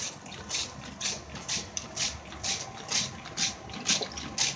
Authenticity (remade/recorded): recorded